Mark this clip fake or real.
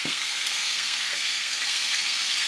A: fake